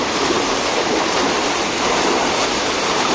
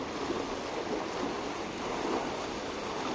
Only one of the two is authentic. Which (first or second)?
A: second